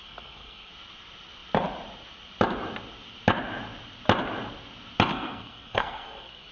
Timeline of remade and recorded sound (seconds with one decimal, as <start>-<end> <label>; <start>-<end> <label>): 0.0-0.7 remade; 0.7-5.1 recorded; 5.1-6.5 remade